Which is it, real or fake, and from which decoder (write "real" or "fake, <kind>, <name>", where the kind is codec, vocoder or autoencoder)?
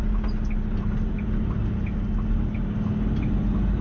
real